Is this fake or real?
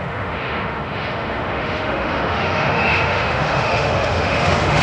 fake